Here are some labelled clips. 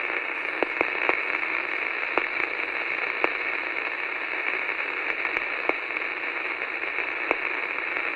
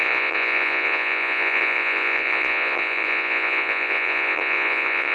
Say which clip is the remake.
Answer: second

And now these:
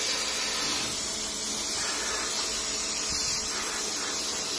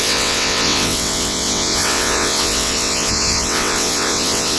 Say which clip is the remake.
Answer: second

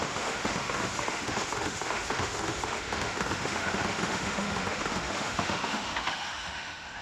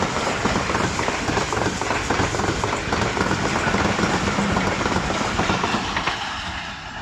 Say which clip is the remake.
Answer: first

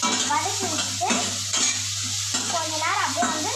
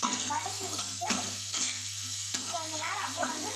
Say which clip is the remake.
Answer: second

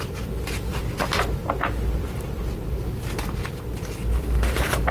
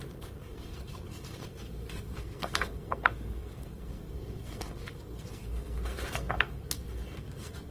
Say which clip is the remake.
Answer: second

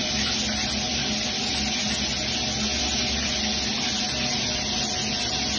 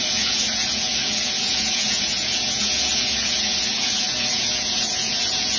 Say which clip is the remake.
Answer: second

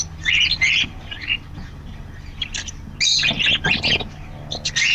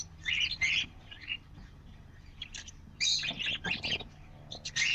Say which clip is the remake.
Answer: second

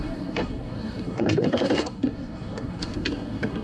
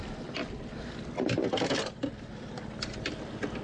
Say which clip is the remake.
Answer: first